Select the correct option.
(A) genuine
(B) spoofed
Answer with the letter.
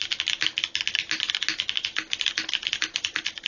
A